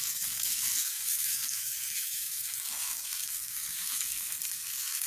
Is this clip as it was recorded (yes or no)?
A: no